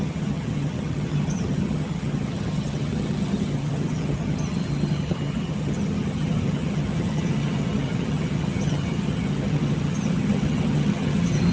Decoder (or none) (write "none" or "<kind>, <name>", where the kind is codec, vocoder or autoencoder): vocoder, HiFi-GAN